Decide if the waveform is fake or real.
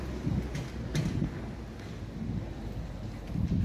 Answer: real